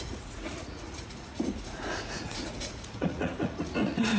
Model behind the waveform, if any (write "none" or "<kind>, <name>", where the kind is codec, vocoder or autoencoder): vocoder, Vocos